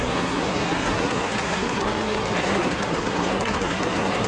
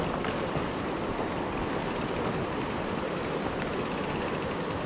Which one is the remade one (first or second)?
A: first